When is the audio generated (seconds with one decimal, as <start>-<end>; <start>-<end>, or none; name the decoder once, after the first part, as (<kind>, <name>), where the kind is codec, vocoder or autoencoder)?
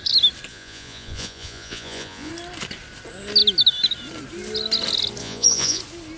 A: 0.5-2.3 (vocoder, Vocos); 5.2-5.8